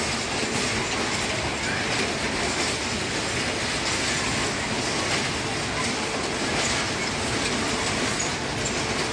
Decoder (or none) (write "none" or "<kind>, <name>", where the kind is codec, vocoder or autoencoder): none